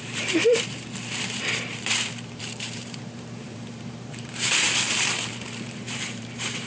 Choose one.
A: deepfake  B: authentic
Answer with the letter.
A